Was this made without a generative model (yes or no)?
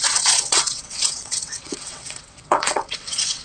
no